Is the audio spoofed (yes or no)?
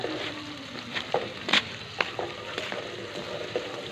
no